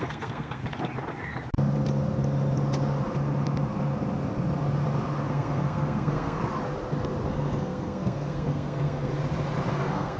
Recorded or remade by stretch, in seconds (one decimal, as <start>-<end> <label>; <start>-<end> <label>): 0.0-0.6 remade; 0.6-5.3 recorded; 5.3-6.4 remade; 6.4-7.3 recorded; 7.3-9.1 remade; 9.1-9.7 recorded; 9.7-10.2 remade